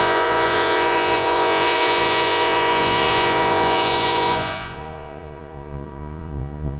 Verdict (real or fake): fake